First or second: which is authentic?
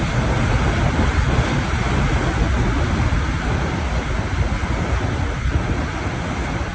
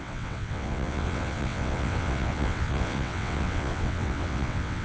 first